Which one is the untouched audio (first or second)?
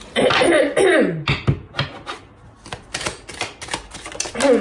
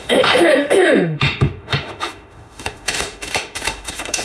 first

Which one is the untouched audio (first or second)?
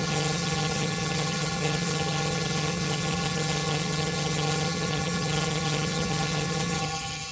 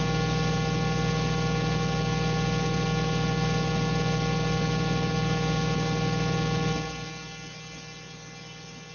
second